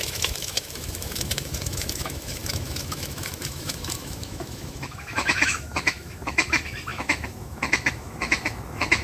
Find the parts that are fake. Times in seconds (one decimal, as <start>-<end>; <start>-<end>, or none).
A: 0.0-9.0